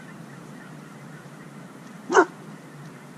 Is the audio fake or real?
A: real